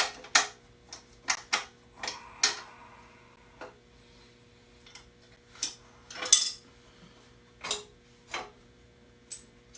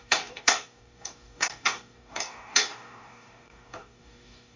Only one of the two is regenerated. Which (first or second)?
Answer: second